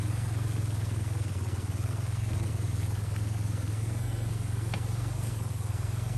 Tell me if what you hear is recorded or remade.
remade